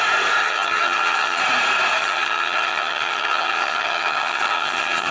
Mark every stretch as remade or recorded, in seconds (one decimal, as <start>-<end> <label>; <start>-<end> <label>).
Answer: 0.0-0.4 recorded; 0.4-1.4 remade; 1.4-2.0 recorded; 2.0-5.1 remade